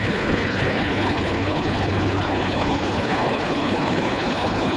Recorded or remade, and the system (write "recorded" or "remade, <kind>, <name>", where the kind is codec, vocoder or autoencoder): remade, codec, HILCodec